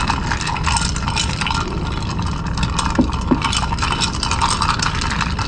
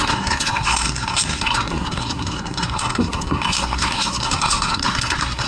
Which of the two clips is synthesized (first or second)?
second